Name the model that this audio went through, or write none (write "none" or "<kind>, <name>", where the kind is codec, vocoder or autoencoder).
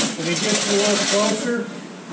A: none